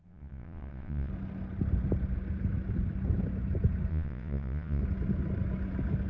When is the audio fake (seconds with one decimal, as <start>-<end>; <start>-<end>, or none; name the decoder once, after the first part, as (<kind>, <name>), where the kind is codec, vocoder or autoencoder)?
0.0-1.1 (vocoder, Vocos); 3.9-4.8